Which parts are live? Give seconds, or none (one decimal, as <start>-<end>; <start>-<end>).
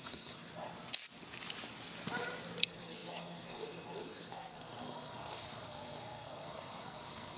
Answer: 0.5-2.6